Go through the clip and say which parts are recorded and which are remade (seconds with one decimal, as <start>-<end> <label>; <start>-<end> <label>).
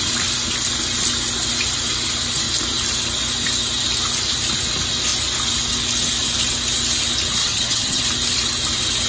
0.0-7.4 recorded; 7.4-8.0 remade; 8.0-9.1 recorded